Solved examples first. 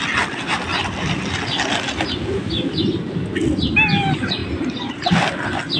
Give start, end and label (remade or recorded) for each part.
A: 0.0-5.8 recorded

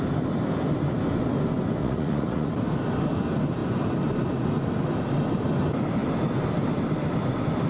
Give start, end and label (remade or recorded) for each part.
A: 0.0-1.8 recorded; 1.8-2.5 remade; 2.5-7.7 recorded

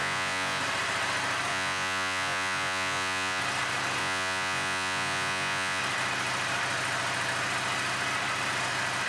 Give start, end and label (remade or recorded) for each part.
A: 0.0-0.6 remade; 0.6-1.5 recorded; 1.5-3.4 remade; 3.4-4.0 recorded; 4.0-5.8 remade; 5.8-9.1 recorded

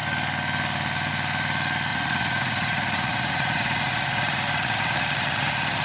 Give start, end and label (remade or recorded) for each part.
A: 0.0-1.9 recorded; 1.9-5.8 remade

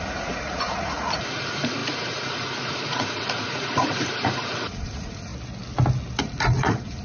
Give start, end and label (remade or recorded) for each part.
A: 0.0-5.3 remade; 5.3-6.2 recorded; 6.2-7.0 remade

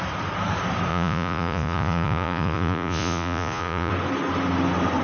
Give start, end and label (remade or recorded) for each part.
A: 0.0-0.9 recorded; 0.9-3.9 remade; 3.9-5.0 recorded